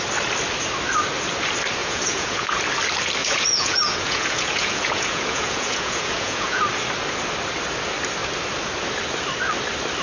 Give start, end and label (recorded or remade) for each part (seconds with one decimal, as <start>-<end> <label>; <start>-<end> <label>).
0.0-1.8 recorded; 1.8-2.6 remade; 2.6-3.2 recorded; 3.2-6.6 remade; 6.6-10.0 recorded